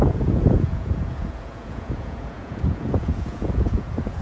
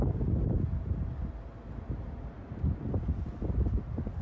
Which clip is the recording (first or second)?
second